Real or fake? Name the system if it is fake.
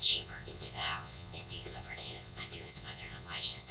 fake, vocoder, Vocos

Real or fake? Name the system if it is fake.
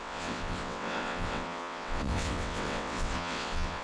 fake, vocoder, WaveNeXt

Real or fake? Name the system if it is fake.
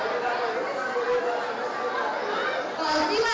real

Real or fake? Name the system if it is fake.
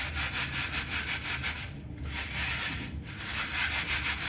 real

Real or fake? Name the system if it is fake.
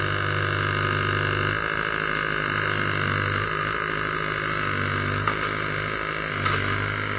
real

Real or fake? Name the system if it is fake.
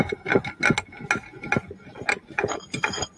real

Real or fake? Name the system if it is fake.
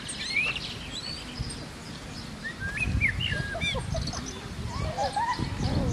real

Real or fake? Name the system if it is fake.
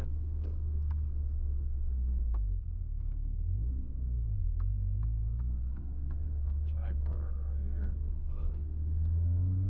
fake, codec, SNAC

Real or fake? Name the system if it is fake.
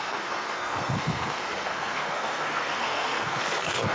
fake, codec, SNAC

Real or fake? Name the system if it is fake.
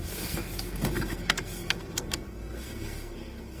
fake, codec, SNAC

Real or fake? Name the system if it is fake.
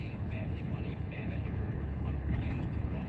fake, codec, HILCodec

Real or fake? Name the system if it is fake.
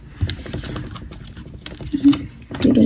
real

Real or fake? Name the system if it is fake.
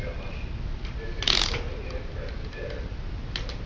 real